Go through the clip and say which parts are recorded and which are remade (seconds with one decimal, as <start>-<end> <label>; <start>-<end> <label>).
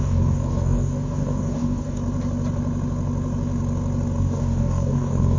0.0-2.0 remade; 2.0-4.2 recorded; 4.2-5.4 remade